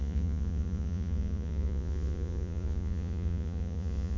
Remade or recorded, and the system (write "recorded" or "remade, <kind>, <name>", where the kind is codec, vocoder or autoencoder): remade, vocoder, Vocos